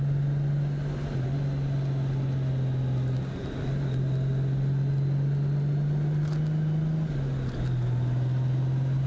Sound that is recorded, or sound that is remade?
recorded